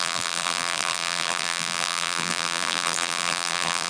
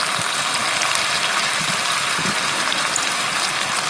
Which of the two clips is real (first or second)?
second